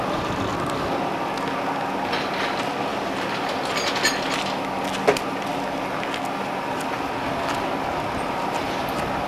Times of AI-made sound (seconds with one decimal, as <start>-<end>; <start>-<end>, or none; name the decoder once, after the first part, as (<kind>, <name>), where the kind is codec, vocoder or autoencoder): 0.5-1.0 (vocoder, BigVGAN v2)